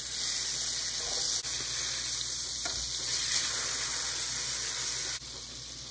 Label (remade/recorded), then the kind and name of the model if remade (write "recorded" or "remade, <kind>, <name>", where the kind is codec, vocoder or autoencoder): recorded